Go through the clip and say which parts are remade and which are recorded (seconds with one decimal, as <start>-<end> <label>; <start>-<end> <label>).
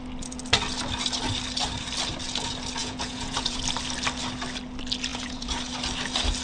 0.0-2.8 recorded; 2.8-3.6 remade; 3.6-5.1 recorded; 5.1-5.6 remade; 5.6-6.4 recorded